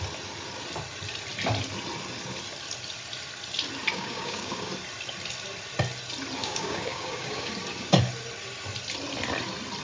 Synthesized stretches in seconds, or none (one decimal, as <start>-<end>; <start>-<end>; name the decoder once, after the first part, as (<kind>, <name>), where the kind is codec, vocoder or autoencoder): 3.9-4.7 (codec, DAC); 6.4-7.5